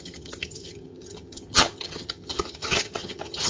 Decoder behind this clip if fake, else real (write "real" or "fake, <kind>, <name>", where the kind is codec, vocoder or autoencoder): fake, vocoder, HiFi-GAN